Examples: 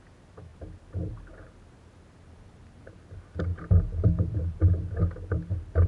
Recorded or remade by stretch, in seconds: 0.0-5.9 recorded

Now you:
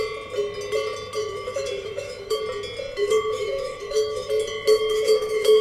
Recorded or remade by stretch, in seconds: 0.0-1.2 recorded; 1.2-2.4 remade; 2.4-3.0 recorded; 3.0-4.3 remade; 4.3-4.7 recorded; 4.7-5.6 remade